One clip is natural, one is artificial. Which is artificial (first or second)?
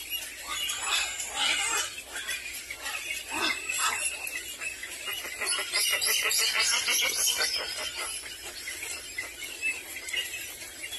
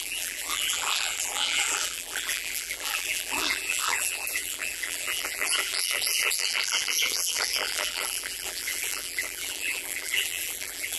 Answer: second